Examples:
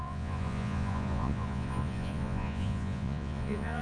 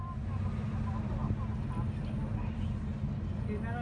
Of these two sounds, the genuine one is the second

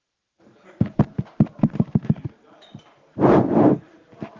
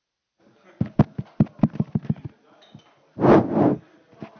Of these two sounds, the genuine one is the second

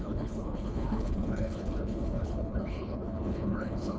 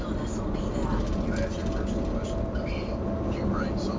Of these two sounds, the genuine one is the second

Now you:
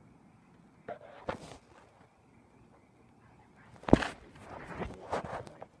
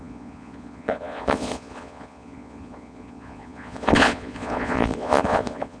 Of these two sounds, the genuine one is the first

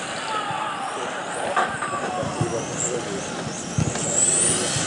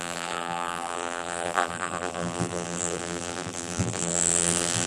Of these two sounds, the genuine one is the first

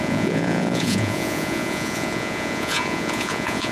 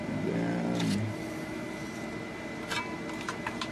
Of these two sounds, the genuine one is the second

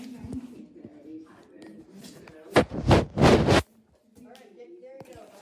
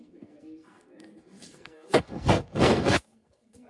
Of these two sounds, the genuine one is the first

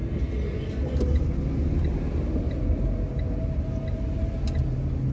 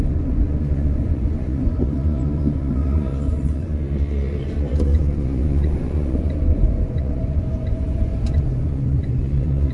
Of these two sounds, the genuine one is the first